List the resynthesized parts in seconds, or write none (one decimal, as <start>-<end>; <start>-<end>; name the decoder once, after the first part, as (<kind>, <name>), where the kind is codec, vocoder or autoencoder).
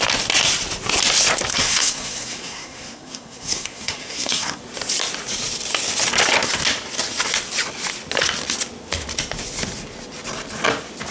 1.5-4.6 (codec, SNAC)